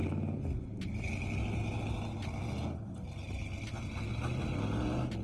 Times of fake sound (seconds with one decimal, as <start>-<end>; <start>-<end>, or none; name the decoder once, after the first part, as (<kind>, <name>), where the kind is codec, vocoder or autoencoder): none